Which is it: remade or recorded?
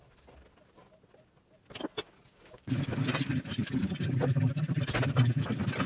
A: recorded